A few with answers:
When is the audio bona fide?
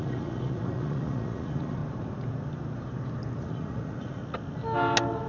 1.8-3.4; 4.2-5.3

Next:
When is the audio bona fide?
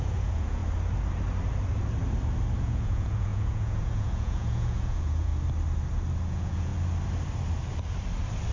0.6-2.6; 5.3-6.3; 6.7-8.5